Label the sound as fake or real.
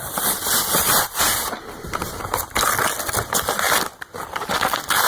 real